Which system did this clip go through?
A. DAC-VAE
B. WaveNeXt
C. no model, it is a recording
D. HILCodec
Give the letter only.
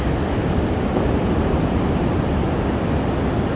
C